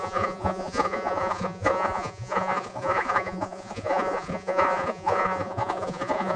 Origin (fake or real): fake